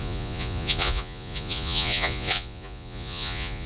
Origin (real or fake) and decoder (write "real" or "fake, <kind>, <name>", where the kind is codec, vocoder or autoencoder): fake, vocoder, Vocos